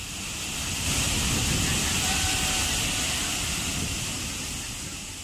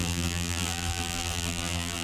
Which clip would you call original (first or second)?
first